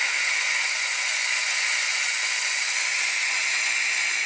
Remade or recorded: remade